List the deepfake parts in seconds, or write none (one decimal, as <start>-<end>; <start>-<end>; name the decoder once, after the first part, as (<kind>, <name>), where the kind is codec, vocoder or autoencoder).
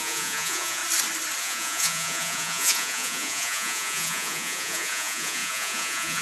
0.0-0.8 (vocoder, Vocos); 1.4-6.2